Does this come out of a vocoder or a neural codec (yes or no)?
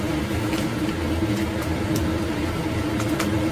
no